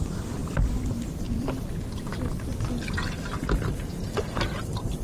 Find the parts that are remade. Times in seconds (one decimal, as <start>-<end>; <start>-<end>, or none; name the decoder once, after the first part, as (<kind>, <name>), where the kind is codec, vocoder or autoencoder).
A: none